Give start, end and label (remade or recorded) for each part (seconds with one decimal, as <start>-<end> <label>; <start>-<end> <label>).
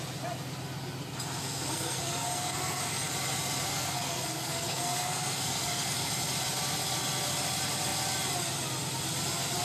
0.0-1.4 recorded; 1.4-3.1 remade; 3.1-3.7 recorded; 3.7-6.1 remade; 6.1-9.6 recorded